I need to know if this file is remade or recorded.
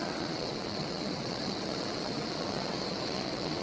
remade